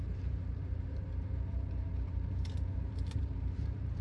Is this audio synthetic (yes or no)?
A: yes